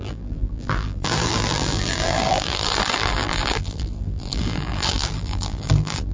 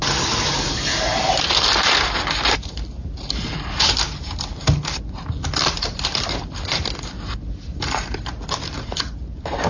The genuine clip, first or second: second